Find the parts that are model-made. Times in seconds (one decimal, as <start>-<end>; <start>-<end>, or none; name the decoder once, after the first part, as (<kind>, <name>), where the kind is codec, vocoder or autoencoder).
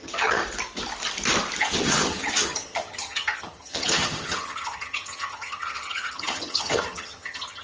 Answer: 0.0-0.4 (vocoder, HiFi-GAN); 1.6-7.6